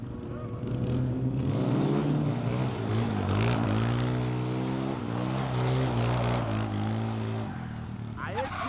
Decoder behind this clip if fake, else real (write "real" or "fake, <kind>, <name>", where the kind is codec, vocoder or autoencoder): real